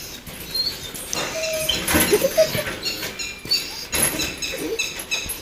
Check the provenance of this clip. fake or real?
real